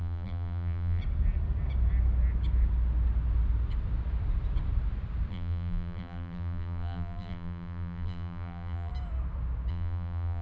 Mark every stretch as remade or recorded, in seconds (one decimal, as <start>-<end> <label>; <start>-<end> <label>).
0.0-1.0 remade; 1.0-5.3 recorded; 5.3-8.9 remade; 8.9-9.7 recorded; 9.7-10.4 remade